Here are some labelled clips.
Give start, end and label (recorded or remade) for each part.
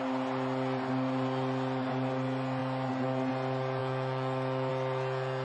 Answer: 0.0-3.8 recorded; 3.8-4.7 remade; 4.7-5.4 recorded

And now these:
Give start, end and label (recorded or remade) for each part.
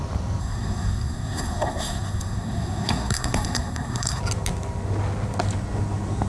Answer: 0.0-0.4 recorded; 0.4-4.2 remade; 4.2-6.3 recorded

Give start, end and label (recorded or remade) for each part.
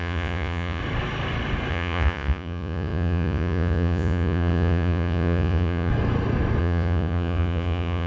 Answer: 0.0-0.8 remade; 0.8-1.7 recorded; 1.7-5.9 remade; 5.9-6.6 recorded; 6.6-8.1 remade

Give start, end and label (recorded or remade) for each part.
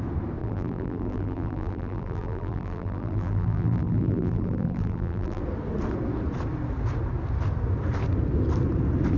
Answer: 0.0-0.4 recorded; 0.4-5.4 remade; 5.4-9.2 recorded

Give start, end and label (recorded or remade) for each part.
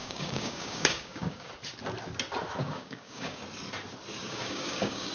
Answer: 0.0-1.5 remade; 1.5-2.6 recorded; 2.6-3.4 remade; 3.4-4.2 recorded; 4.2-5.1 remade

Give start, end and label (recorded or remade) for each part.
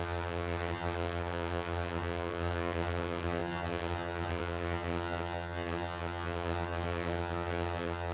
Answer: 0.0-8.1 remade